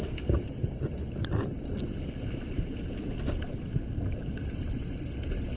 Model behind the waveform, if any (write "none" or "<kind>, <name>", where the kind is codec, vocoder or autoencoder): none